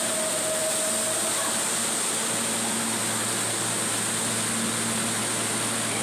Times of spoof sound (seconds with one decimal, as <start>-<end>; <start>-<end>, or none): none